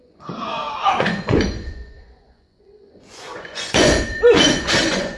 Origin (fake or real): fake